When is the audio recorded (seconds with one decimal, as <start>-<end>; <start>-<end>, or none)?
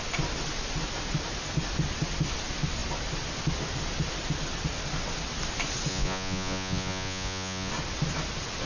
0.0-5.9; 7.7-8.7